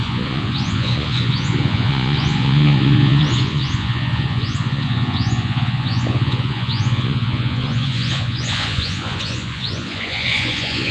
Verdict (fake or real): fake